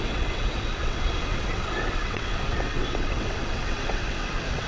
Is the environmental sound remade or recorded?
remade